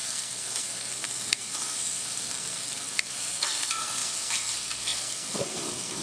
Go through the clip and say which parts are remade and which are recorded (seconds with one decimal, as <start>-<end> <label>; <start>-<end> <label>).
0.0-6.0 remade

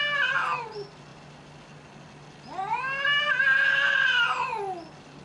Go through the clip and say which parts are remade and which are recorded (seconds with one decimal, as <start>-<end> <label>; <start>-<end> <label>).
0.0-5.2 recorded

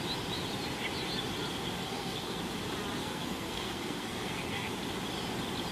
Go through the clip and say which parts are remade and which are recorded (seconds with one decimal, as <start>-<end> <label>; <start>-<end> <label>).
0.0-1.8 recorded; 1.8-2.4 remade; 2.4-3.0 recorded; 3.0-4.7 remade; 4.7-5.7 recorded

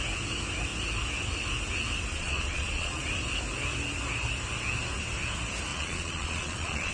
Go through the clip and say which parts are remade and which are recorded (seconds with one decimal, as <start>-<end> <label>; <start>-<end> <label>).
0.0-2.1 recorded; 2.1-3.0 remade; 3.0-5.7 recorded; 5.7-6.9 remade

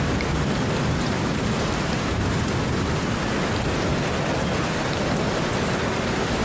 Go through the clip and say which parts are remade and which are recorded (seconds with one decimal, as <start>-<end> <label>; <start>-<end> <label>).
0.0-1.3 recorded; 1.3-2.3 remade; 2.3-6.4 recorded

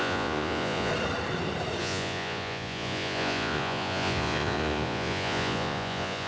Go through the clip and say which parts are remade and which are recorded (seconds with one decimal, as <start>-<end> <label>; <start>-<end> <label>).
0.0-0.9 remade; 0.9-1.8 recorded; 1.8-6.3 remade